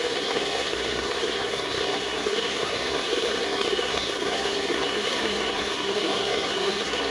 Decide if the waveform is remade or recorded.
remade